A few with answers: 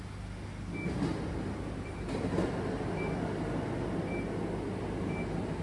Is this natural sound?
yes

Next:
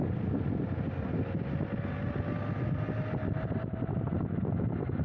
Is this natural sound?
yes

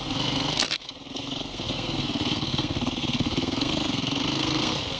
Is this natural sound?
no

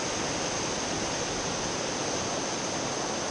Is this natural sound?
yes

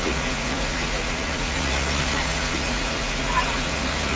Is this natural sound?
no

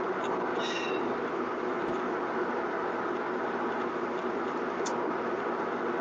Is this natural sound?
yes